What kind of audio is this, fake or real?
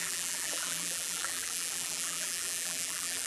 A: fake